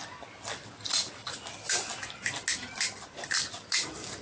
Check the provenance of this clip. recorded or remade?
recorded